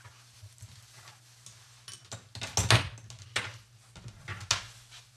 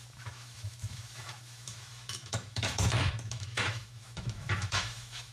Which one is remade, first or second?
second